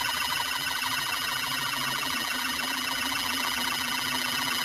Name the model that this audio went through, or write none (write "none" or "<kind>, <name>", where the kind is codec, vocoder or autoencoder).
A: vocoder, BigVGAN v2